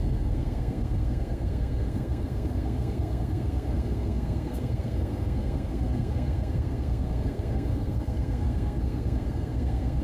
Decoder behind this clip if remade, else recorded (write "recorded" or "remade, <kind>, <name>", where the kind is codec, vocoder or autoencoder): remade, codec, SNAC